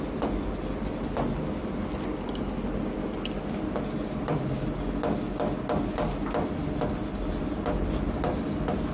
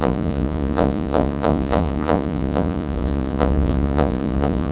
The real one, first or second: first